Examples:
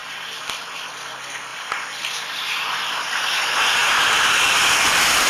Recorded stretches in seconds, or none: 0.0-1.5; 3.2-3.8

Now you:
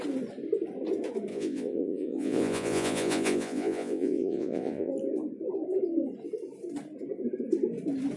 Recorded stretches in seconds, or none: 0.0-1.3; 4.9-8.2

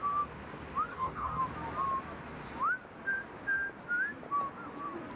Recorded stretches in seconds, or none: 0.0-0.9; 1.4-5.2